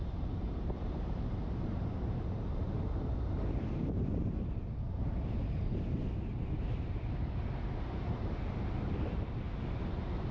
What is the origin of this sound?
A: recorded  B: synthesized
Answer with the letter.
B